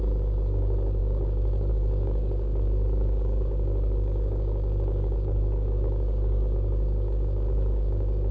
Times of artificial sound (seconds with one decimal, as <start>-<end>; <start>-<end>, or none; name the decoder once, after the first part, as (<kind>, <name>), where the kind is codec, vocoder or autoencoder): 0.0-8.3 (codec, DAC)